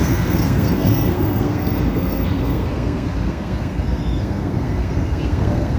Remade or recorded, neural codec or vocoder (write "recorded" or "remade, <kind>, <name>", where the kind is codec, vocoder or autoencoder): remade, codec, SNAC